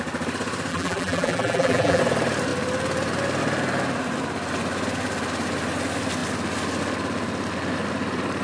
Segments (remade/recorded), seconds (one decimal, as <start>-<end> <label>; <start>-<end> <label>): 0.0-0.7 recorded; 0.7-2.0 remade; 2.0-8.4 recorded